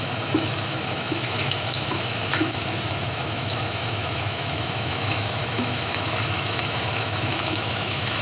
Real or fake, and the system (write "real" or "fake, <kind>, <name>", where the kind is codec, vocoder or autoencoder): fake, autoencoder, DAC-VAE